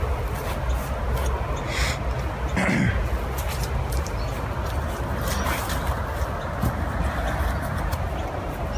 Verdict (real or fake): real